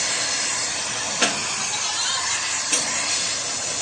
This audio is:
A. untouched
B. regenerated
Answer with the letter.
A